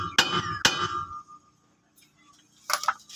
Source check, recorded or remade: recorded